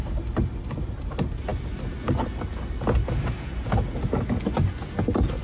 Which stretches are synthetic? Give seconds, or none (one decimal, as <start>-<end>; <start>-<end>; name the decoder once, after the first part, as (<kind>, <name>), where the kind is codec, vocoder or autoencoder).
none